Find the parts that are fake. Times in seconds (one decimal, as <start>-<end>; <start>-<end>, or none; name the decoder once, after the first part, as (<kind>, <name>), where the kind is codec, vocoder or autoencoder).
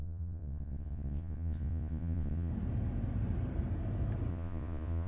0.0-2.5 (vocoder, Vocos); 4.3-5.1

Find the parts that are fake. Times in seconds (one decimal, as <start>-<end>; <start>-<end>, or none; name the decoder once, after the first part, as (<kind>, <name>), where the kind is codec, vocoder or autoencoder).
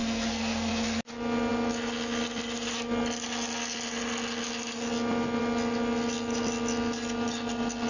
0.0-0.7 (codec, SNAC)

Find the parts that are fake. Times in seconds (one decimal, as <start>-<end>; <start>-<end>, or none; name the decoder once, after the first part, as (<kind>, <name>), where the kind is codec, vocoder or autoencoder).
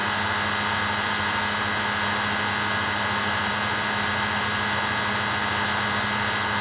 none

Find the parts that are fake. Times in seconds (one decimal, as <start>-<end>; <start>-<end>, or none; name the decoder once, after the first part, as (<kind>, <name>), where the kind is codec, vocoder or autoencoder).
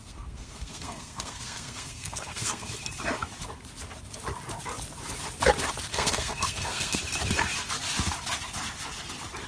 0.0-2.7 (codec, SNAC); 5.9-7.0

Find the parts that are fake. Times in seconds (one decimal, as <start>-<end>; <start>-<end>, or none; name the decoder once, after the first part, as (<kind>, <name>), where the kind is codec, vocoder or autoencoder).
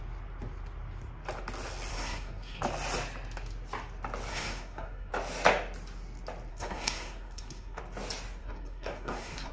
1.9-2.6 (codec, SNAC); 4.3-5.1; 6.5-7.8; 8.4-9.5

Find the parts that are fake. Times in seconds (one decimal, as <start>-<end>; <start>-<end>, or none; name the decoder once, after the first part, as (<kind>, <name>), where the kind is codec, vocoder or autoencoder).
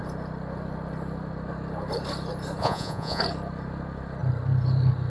2.6-3.2 (vocoder, Vocos)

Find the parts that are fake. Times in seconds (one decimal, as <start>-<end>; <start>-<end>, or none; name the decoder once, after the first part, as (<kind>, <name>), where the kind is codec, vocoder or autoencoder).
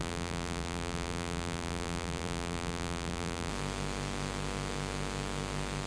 0.0-3.5 (vocoder, BigVGAN v2)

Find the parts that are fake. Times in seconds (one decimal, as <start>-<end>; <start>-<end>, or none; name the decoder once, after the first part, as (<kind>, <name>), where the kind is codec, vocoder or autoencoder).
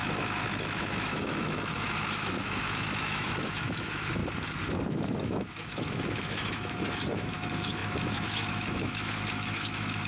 0.0-4.2 (autoencoder, DAC-VAE); 4.9-10.1